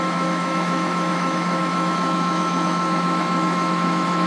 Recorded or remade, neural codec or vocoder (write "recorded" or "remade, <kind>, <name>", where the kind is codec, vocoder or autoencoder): remade, autoencoder, DAC-VAE